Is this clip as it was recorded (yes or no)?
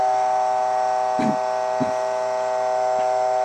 yes